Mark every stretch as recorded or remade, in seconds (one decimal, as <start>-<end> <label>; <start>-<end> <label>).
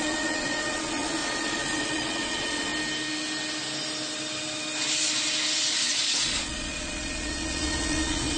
0.0-2.7 remade; 2.7-5.9 recorded; 5.9-8.4 remade